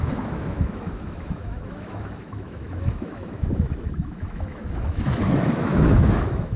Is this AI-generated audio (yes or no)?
yes